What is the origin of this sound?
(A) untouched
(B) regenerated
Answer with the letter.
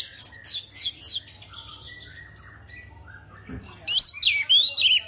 A